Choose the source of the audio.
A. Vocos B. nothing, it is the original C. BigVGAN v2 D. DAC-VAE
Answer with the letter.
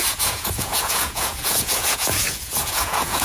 A